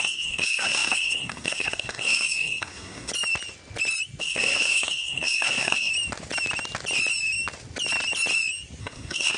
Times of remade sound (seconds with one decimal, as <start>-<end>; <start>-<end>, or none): 0.0-3.1; 4.2-5.9; 8.8-9.4